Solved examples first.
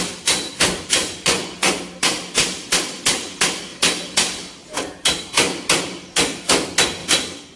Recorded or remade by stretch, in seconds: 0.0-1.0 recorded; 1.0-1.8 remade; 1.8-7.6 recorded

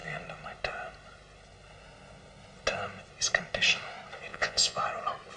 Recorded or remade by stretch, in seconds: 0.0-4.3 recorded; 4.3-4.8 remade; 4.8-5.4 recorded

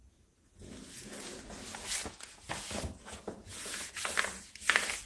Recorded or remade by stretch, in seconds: 0.0-1.4 remade; 1.4-2.0 recorded; 2.0-5.1 remade

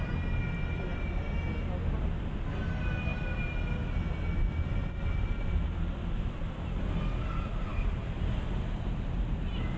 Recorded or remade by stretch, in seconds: 0.0-9.8 recorded

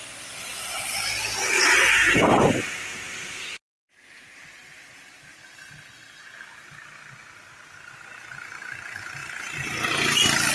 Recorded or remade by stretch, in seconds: 0.0-10.5 recorded

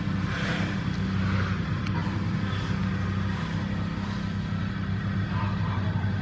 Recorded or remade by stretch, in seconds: 0.0-6.2 recorded